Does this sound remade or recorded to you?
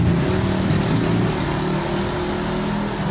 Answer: recorded